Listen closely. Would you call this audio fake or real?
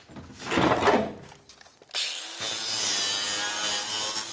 real